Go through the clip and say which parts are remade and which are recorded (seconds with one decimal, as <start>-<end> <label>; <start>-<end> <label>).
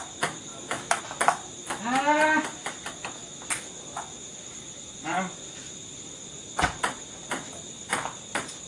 0.0-0.5 recorded; 0.5-1.0 remade; 1.0-8.7 recorded